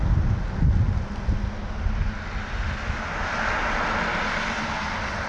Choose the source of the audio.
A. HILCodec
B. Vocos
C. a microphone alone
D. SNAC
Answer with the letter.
C